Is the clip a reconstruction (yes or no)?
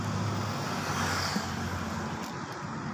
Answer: no